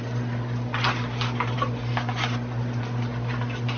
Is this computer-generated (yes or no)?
no